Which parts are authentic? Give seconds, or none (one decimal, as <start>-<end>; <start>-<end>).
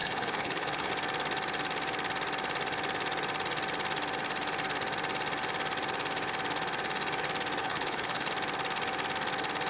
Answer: 0.9-7.6; 8.3-9.7